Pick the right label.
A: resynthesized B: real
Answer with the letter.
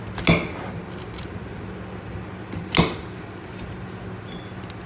B